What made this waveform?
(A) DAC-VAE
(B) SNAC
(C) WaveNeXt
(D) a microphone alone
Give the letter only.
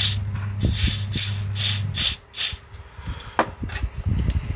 D